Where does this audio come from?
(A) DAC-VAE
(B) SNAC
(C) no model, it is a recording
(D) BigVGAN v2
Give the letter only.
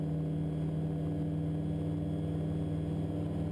C